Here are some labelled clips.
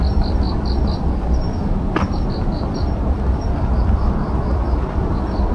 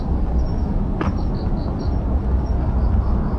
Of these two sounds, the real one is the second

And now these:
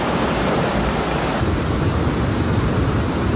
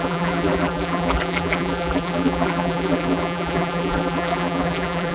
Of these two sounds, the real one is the first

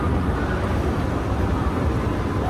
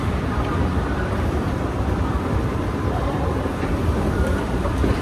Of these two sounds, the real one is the first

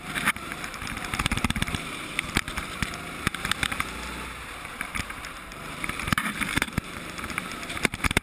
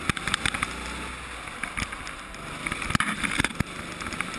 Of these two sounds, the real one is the second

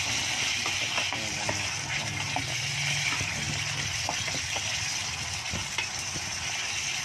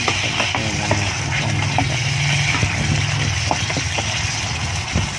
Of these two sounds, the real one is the second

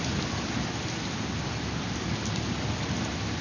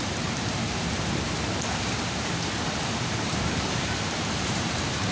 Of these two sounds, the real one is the first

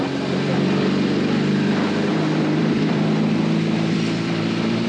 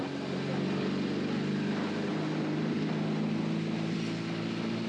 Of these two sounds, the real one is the second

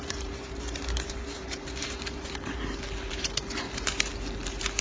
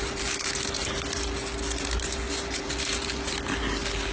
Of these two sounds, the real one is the second